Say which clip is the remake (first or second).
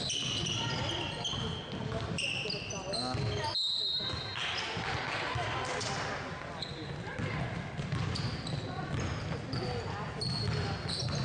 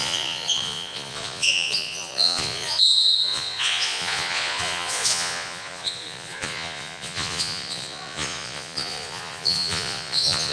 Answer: second